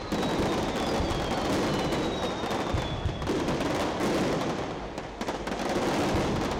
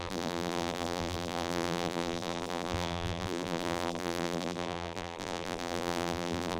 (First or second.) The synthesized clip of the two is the second